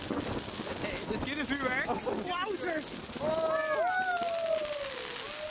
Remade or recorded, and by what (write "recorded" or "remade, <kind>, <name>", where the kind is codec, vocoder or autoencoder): recorded